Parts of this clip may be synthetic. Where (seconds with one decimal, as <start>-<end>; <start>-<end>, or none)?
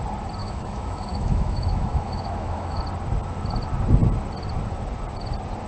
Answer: 0.4-2.8